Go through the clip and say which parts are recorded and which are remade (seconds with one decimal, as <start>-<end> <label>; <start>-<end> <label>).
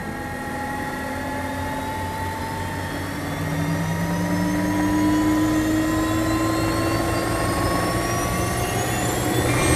0.0-9.8 recorded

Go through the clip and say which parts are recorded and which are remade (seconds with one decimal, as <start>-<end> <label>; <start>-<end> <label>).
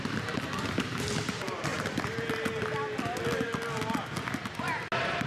0.0-5.3 recorded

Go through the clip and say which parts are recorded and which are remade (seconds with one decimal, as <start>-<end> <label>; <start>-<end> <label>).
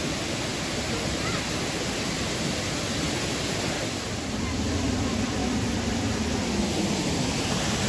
0.0-7.9 recorded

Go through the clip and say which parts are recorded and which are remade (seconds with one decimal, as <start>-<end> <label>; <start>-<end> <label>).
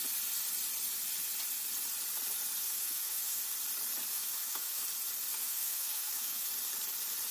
0.0-2.6 recorded; 2.6-3.4 remade; 3.4-4.1 recorded; 4.1-4.8 remade; 4.8-5.3 recorded; 5.3-6.5 remade; 6.5-7.3 recorded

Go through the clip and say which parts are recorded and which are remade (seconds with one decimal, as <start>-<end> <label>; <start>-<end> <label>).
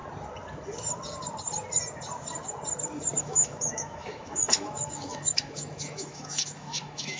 0.0-3.2 recorded; 3.2-7.2 remade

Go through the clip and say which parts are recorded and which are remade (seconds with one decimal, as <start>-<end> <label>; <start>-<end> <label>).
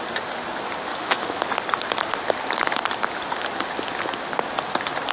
0.0-0.9 recorded; 0.9-1.4 remade; 1.4-5.1 recorded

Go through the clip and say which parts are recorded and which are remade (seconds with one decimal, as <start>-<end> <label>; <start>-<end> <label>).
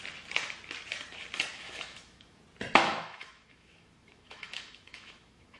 0.0-1.5 recorded; 1.5-2.4 remade; 2.4-2.8 recorded; 2.8-5.6 remade